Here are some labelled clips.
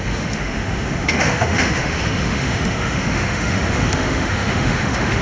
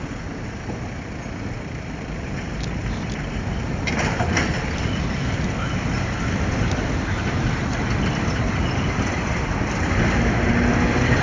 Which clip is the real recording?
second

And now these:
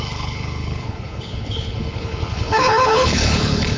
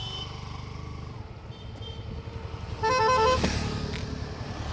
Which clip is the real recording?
second